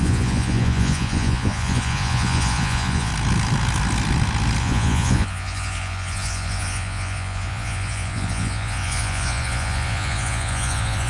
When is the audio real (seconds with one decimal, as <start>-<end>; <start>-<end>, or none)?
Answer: 3.1-4.6